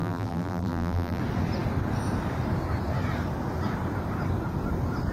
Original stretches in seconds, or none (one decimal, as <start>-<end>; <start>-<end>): 1.2-5.1